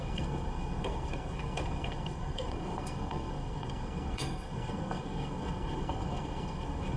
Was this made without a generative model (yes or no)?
no